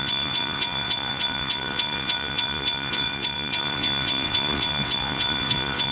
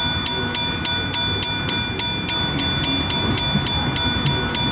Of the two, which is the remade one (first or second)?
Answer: first